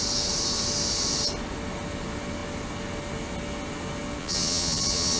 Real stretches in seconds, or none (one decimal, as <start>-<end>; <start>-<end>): 0.0-4.2